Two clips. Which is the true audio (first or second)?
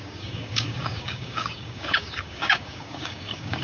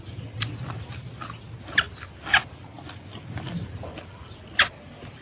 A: second